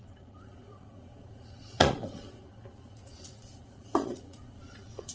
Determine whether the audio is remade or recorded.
remade